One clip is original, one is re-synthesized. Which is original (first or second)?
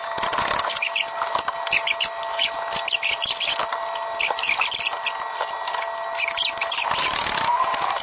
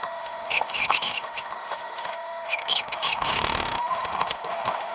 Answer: first